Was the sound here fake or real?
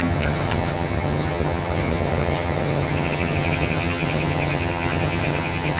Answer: fake